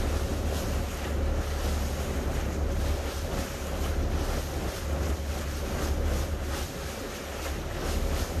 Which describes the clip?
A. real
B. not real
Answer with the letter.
A